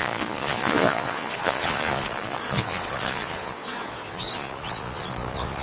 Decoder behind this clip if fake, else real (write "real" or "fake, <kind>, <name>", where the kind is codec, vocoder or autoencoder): fake, vocoder, Vocos